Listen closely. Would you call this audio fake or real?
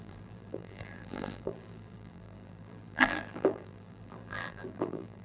fake